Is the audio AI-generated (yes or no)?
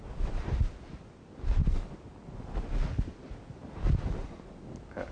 no